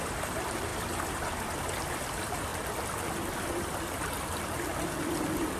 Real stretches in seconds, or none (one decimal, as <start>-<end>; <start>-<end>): 0.7-1.6; 2.5-3.6

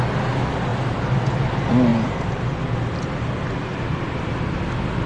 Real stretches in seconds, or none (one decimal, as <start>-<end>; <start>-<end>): 0.0-0.7; 1.2-1.9; 2.4-3.7; 4.3-5.1

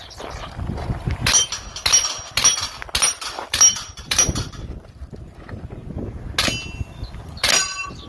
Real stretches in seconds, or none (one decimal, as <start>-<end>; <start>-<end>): 0.0-3.4; 5.0-8.1

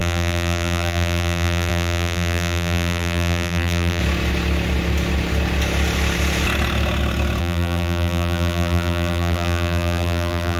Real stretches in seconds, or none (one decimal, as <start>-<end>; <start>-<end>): 4.0-7.4

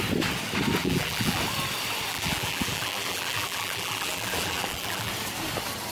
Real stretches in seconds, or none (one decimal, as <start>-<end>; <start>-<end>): 0.0-0.8; 1.4-2.1; 5.1-5.9